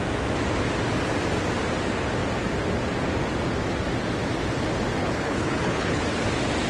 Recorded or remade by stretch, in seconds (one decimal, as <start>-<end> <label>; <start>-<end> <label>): 0.0-5.0 recorded; 5.0-6.0 remade; 6.0-6.7 recorded